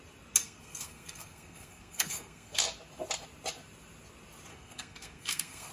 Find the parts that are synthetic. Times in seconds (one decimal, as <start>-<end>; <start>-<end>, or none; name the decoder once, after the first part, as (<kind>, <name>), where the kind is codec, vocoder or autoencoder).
0.4-2.6 (codec, SNAC); 4.5-5.7

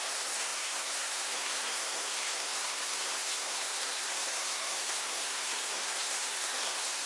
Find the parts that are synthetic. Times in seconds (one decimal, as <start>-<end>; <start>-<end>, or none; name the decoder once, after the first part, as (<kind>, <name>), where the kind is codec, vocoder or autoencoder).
0.0-7.1 (codec, SNAC)